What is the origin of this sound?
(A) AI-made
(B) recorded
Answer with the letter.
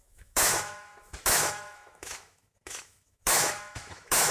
A